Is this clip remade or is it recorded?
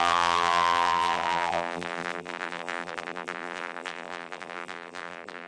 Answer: remade